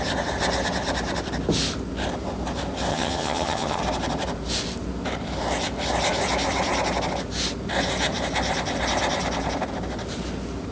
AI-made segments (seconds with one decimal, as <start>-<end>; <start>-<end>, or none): 2.9-3.8